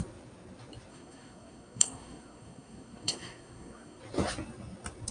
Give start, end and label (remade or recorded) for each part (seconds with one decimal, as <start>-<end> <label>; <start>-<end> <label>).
0.0-0.9 recorded; 0.9-4.0 remade; 4.0-5.1 recorded